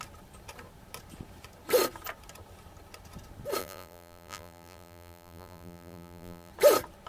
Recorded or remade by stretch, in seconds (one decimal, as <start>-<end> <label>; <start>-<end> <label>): 0.0-3.6 recorded; 3.6-6.5 remade; 6.5-7.1 recorded